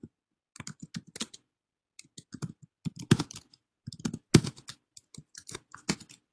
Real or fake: real